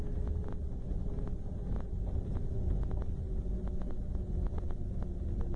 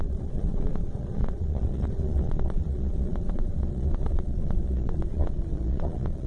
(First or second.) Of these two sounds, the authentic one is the first